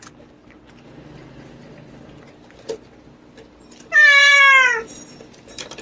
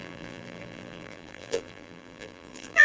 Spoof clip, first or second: second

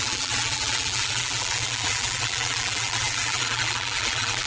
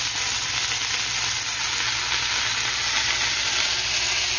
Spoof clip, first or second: first